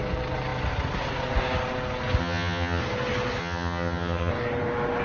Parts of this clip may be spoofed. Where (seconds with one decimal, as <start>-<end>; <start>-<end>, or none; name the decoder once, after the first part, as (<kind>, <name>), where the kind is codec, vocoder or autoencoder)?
2.2-2.8 (vocoder, HiFi-GAN); 3.4-4.3

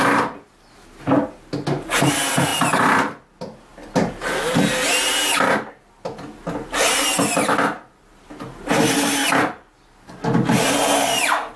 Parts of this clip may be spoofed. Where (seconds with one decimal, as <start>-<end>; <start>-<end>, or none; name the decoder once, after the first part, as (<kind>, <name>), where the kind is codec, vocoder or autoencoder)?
none

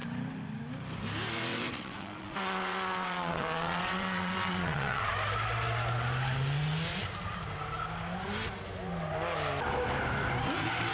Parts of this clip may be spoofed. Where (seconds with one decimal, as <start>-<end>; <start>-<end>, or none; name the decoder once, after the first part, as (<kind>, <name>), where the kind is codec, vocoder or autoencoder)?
1.5-5.1 (vocoder, WaveNeXt)

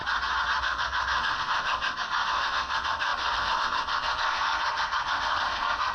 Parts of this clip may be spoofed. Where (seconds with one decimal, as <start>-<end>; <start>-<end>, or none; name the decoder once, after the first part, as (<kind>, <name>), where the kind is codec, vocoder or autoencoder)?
0.6-5.9 (codec, SNAC)